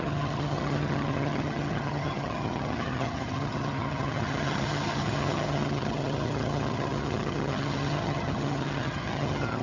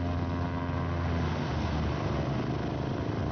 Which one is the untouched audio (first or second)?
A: second